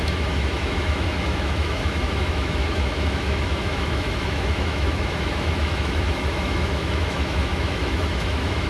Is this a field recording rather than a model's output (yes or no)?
no